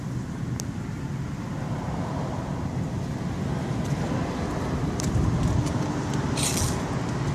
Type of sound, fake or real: real